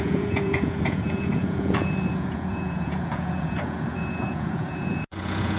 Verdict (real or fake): fake